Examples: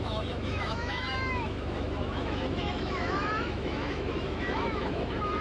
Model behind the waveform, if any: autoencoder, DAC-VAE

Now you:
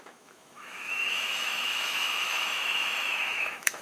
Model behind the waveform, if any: autoencoder, DAC-VAE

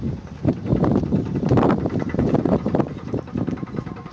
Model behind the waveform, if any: vocoder, BigVGAN v2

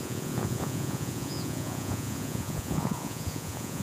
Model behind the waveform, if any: vocoder, Vocos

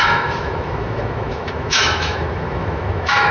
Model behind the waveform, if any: autoencoder, DAC-VAE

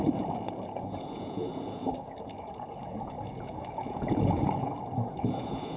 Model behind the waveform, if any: vocoder, Vocos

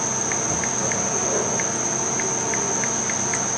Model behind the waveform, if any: none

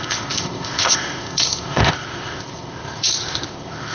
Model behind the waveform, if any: codec, ZipCodec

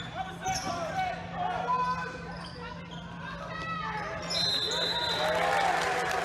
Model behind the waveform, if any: none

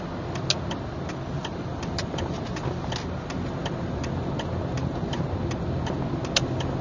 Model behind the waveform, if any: none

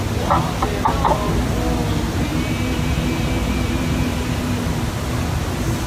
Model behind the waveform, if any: none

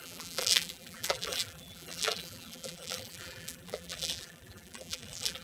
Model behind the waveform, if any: vocoder, BigVGAN v2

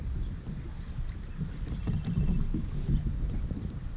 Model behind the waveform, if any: none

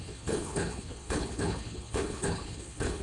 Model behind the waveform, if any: codec, HILCodec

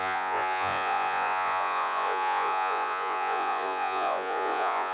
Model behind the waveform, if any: vocoder, Vocos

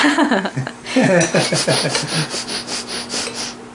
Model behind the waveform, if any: none